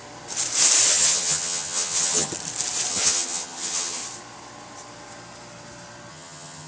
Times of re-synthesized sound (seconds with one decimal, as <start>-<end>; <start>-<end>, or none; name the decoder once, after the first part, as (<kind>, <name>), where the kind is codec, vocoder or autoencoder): 0.9-2.3 (vocoder, HiFi-GAN); 2.9-4.0; 6.1-6.7